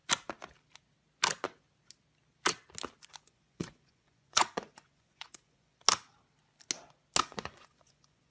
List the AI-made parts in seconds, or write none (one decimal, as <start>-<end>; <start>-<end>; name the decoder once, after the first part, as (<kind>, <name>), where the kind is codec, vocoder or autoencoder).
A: 3.1-5.8 (vocoder, Vocos); 7.2-8.3